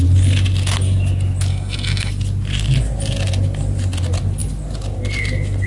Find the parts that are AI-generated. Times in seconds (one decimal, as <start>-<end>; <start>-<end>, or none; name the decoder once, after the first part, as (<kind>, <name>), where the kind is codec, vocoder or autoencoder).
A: 1.5-2.1 (codec, SNAC)